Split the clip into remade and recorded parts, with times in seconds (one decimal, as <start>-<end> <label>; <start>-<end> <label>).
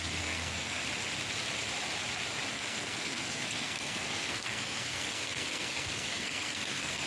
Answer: 0.0-0.8 remade; 0.8-2.5 recorded; 2.5-7.1 remade